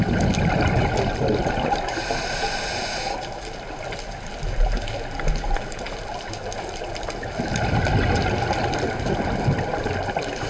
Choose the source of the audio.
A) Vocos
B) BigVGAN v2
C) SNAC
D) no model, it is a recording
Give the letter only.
D